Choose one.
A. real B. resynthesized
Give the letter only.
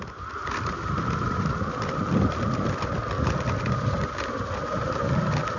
A